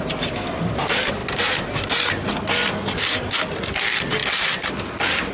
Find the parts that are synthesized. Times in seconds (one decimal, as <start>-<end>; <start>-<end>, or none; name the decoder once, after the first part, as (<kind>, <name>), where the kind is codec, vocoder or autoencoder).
none